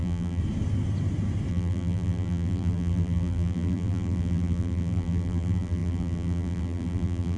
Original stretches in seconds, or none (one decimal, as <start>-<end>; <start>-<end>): 0.4-1.5